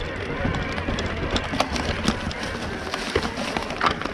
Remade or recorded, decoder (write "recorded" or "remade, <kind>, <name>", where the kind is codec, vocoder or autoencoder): recorded